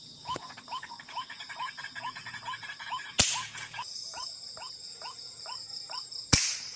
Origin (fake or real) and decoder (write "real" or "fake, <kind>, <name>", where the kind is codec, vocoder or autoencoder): fake, vocoder, Vocos